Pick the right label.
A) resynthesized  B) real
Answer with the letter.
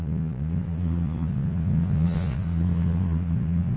A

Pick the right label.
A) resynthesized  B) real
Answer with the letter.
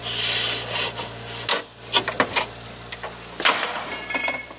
B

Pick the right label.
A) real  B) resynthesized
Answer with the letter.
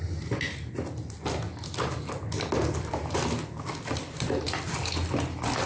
A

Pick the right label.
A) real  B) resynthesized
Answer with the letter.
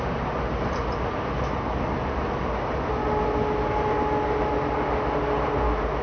A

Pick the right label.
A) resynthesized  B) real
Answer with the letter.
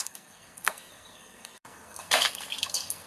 A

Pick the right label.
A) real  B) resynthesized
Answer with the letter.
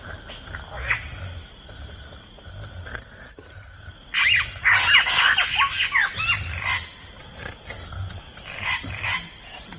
A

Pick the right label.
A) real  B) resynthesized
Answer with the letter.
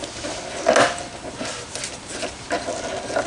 A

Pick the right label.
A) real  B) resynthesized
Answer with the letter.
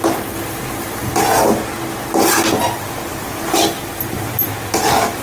A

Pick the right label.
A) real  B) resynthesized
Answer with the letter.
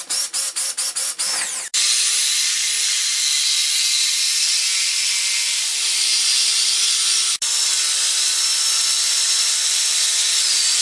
A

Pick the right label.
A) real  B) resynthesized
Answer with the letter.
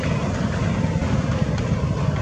B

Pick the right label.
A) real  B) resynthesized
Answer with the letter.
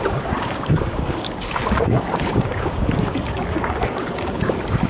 B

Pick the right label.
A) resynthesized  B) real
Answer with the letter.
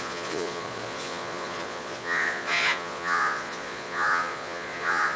A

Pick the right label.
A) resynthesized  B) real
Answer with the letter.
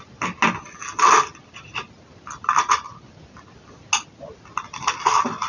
B